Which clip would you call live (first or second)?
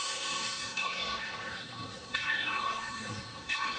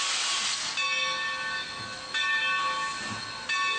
second